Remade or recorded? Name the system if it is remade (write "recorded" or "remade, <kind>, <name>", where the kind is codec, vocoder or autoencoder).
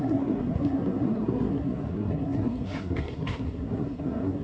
remade, codec, SNAC